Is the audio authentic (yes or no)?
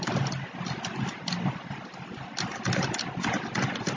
yes